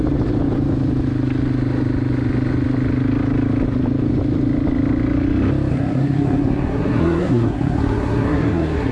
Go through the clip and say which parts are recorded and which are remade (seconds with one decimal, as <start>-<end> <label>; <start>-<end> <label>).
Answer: 0.0-5.7 recorded; 5.7-8.9 remade